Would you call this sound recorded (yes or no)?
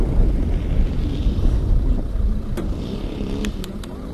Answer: yes